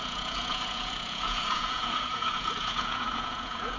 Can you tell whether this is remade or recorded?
remade